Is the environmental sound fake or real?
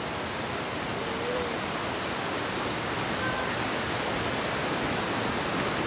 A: real